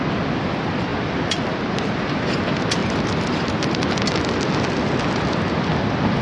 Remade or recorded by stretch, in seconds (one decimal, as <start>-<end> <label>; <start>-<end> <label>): 0.0-6.2 recorded